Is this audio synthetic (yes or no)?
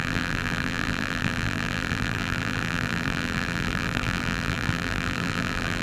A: yes